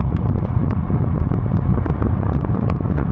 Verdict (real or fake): fake